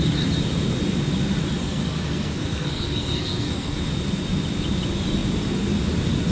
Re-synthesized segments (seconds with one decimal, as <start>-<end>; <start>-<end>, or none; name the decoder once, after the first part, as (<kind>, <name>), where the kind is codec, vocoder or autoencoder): 1.6-3.8 (codec, SNAC)